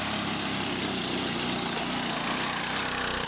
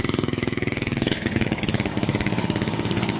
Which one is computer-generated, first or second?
second